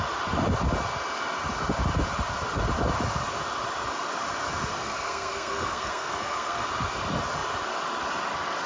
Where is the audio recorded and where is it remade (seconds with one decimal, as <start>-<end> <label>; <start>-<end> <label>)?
0.0-4.7 recorded; 4.7-6.6 remade; 6.6-8.7 recorded